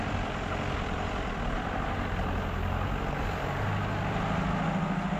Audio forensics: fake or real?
real